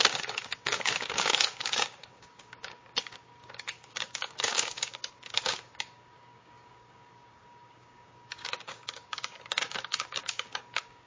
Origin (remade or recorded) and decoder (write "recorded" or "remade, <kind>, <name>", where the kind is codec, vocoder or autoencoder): remade, codec, DAC